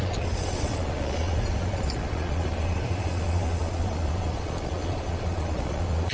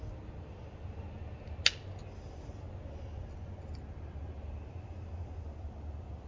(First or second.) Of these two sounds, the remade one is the first